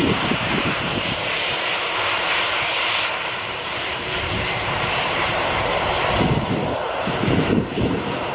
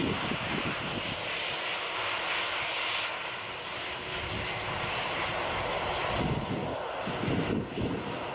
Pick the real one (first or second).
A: second